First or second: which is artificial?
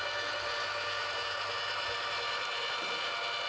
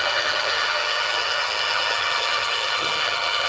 second